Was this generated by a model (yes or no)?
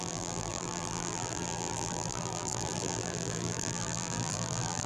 yes